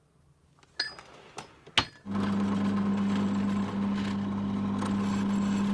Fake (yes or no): no